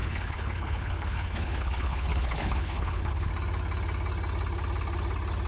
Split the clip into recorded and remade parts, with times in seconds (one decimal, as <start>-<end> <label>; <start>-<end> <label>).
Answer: 0.0-3.3 remade; 3.3-5.5 recorded